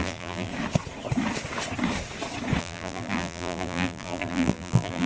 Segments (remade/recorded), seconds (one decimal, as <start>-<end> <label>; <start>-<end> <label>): 0.0-0.5 remade; 0.5-2.6 recorded; 2.6-5.1 remade